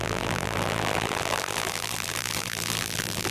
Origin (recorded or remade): remade